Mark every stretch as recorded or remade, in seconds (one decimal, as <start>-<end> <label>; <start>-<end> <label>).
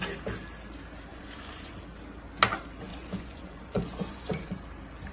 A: 0.0-1.1 recorded; 1.1-1.7 remade; 1.7-2.9 recorded; 2.9-4.5 remade; 4.5-5.1 recorded